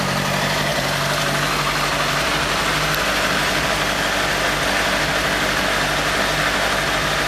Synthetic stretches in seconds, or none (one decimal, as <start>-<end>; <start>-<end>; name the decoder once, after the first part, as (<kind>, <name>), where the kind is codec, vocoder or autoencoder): none